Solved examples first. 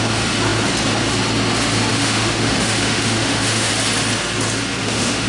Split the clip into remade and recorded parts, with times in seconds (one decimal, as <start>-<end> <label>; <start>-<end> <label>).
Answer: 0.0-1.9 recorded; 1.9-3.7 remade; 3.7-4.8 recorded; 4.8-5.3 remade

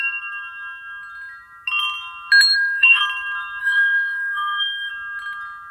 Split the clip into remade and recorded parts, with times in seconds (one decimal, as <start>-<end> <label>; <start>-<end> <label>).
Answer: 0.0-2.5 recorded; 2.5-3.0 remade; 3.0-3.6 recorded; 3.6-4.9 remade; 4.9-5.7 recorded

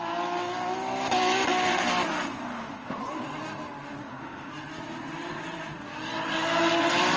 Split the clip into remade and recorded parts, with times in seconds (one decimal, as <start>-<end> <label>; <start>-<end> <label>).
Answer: 0.0-2.5 recorded; 2.5-3.0 remade; 3.0-4.0 recorded; 4.0-4.5 remade; 4.5-7.2 recorded

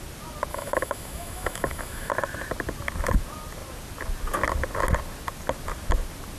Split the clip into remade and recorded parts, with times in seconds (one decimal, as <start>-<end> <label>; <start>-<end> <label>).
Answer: 0.0-0.5 recorded; 0.5-2.1 remade; 2.1-6.4 recorded

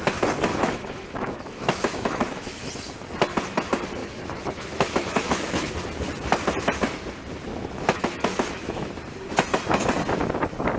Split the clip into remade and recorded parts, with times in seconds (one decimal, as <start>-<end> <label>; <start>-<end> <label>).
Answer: 0.0-0.5 recorded; 0.5-2.7 remade; 2.7-4.0 recorded; 4.0-5.7 remade; 5.7-7.5 recorded; 7.5-8.9 remade; 8.9-10.8 recorded

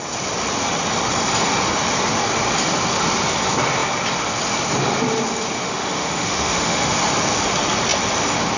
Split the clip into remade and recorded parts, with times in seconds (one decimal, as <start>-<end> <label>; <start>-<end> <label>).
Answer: 0.0-5.6 recorded; 5.6-6.9 remade; 6.9-8.6 recorded

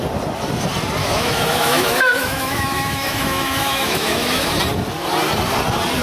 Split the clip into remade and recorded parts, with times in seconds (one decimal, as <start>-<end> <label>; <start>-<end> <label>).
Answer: 0.0-1.0 recorded; 1.0-4.6 remade; 4.6-6.0 recorded

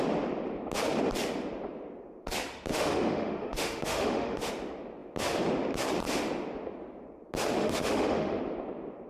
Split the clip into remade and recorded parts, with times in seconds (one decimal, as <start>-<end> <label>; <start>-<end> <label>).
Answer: 0.0-2.7 recorded; 2.7-4.5 remade; 4.5-7.6 recorded; 7.6-8.4 remade; 8.4-9.1 recorded